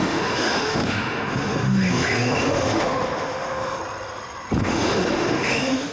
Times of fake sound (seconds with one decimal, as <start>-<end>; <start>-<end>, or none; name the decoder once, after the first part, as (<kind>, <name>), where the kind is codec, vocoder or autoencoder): 0.0-3.8 (autoencoder, DAC-VAE); 4.6-5.9